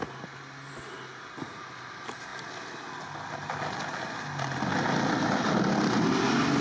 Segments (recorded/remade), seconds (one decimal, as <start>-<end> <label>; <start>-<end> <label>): 0.0-6.6 recorded